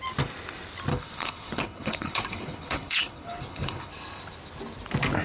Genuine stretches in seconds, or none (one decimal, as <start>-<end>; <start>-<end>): 0.0-0.9; 3.9-5.2